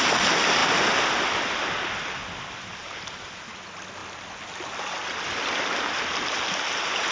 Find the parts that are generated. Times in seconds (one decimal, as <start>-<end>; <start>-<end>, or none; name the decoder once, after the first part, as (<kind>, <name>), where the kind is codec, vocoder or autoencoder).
none